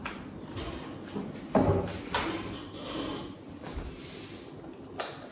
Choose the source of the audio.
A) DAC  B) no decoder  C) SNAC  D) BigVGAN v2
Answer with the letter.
B